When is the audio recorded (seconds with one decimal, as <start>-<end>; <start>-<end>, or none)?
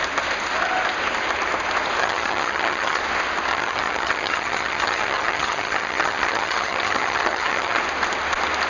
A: 0.0-2.0; 3.0-3.5; 7.8-8.7